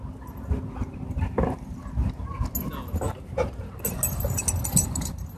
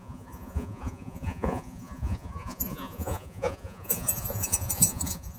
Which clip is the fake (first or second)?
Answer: second